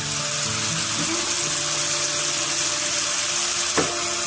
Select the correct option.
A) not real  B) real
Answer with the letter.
B